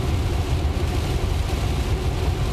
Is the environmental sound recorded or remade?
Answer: recorded